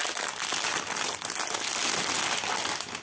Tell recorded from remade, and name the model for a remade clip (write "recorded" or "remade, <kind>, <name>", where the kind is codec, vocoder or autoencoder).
recorded